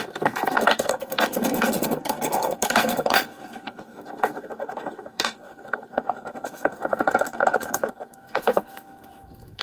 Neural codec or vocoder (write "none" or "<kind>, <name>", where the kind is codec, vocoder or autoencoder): codec, SNAC